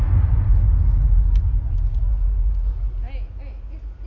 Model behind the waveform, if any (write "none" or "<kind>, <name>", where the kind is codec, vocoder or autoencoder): none